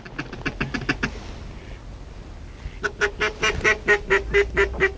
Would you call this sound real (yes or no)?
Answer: yes